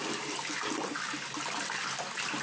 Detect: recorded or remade recorded